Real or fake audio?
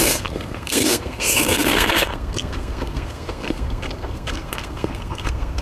fake